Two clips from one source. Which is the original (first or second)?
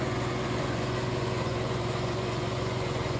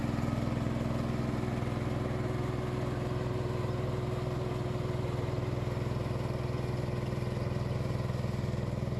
second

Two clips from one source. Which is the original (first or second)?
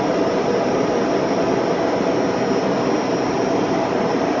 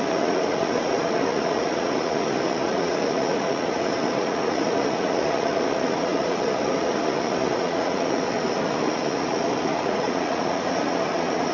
first